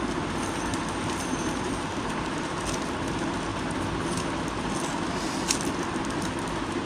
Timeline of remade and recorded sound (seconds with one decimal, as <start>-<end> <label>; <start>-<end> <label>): 0.0-0.7 recorded; 0.7-2.6 remade; 2.6-6.9 recorded